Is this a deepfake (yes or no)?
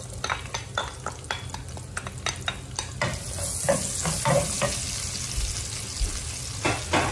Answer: no